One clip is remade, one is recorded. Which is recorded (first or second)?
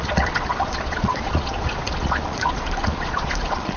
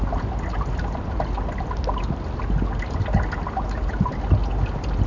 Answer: second